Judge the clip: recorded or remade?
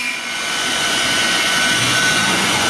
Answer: remade